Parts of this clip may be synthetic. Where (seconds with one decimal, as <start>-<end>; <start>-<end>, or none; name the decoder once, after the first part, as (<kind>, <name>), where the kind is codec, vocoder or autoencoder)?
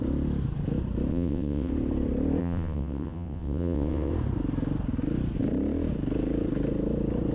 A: 1.1-1.7 (vocoder, WaveNeXt); 2.4-4.1